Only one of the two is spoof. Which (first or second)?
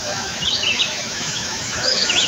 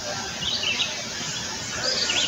first